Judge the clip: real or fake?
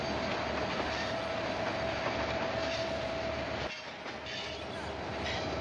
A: real